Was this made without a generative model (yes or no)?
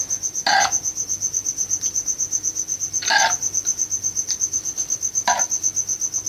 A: yes